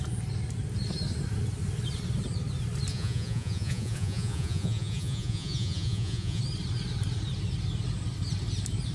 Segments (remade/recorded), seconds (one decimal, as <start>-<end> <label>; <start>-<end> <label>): 0.0-2.9 recorded; 2.9-6.4 remade; 6.4-8.9 recorded